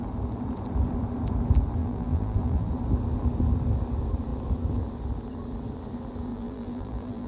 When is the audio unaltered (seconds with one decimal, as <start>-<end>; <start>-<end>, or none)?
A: 0.0-1.8; 2.7-6.3